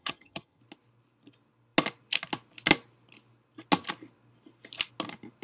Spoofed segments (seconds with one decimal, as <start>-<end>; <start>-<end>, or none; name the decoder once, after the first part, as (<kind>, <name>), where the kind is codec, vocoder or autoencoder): 0.0-0.6 (vocoder, HiFi-GAN)